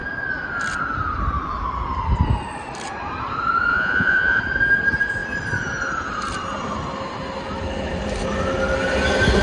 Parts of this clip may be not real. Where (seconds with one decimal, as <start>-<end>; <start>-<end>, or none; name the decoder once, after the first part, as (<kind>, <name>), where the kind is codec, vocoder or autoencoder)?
3.7-4.4 (vocoder, Vocos)